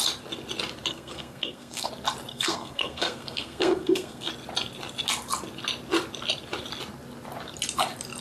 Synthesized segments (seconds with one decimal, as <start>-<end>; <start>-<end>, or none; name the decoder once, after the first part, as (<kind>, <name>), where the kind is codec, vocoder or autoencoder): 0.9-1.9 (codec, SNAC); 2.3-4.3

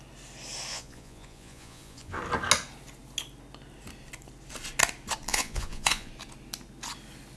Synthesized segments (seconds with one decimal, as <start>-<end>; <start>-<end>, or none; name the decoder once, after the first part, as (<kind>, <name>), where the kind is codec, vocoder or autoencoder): 0.7-2.2 (vocoder, Vocos); 5.3-6.1

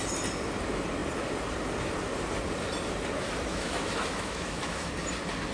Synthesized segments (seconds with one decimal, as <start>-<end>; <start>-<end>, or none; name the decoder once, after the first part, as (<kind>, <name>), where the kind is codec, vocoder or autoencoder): 3.5-4.9 (autoencoder, DAC-VAE)

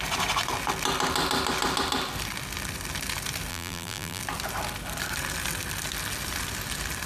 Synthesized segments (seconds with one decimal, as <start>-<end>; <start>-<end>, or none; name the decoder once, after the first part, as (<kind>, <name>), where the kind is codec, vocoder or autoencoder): 3.5-4.2 (vocoder, BigVGAN v2)

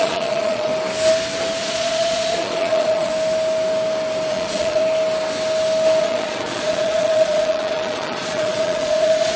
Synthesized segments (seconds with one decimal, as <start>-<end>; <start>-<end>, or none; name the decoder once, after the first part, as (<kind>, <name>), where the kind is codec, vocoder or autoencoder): 0.0-0.7 (vocoder, Vocos); 1.6-3.1; 4.3-4.8; 6.0-9.4

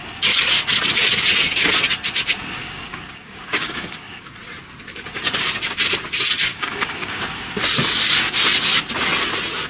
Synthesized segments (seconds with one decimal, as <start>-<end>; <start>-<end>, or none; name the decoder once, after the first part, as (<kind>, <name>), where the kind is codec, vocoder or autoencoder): 2.6-4.3 (codec, DAC); 6.5-7.2